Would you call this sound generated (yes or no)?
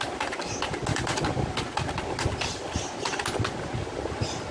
no